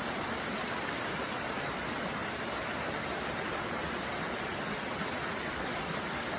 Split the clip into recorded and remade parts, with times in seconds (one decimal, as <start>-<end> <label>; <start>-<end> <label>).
0.0-2.2 remade; 2.2-5.6 recorded; 5.6-6.4 remade